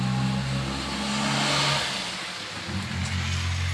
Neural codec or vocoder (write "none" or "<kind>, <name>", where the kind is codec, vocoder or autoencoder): none